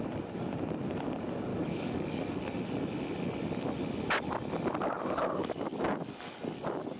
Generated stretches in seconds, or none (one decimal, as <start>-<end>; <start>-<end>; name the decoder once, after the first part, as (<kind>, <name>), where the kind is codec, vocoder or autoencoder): 1.5-2.4 (codec, DAC)